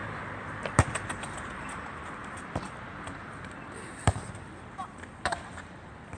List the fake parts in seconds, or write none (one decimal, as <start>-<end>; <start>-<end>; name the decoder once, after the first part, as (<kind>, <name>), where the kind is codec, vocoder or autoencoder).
1.2-6.2 (vocoder, BigVGAN v2)